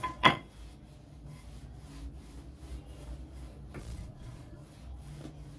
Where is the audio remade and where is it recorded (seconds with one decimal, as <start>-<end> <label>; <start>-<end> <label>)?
0.0-0.4 remade; 0.4-3.8 recorded; 3.8-4.6 remade; 4.6-5.6 recorded